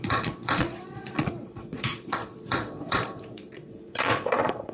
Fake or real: fake